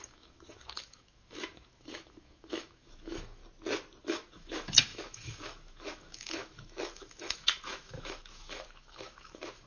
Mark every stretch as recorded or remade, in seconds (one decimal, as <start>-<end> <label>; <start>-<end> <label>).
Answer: 0.0-3.4 remade; 3.4-4.0 recorded; 4.0-9.7 remade